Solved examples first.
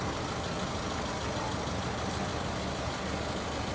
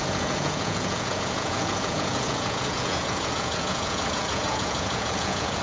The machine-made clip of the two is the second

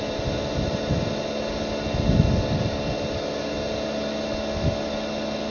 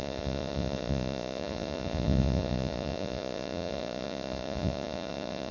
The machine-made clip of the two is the second